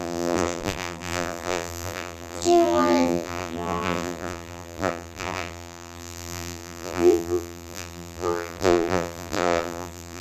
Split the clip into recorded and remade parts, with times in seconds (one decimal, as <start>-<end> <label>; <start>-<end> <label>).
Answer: 0.0-10.2 remade